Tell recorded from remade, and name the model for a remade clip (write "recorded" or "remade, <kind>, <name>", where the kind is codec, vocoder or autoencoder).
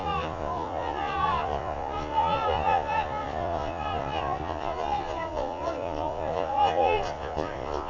remade, vocoder, Vocos